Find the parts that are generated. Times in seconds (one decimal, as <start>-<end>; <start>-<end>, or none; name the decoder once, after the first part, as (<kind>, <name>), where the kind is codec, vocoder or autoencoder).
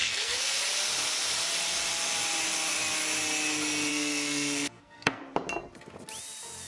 0.0-0.6 (codec, SNAC); 3.9-5.2